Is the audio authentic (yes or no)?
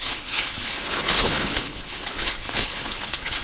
no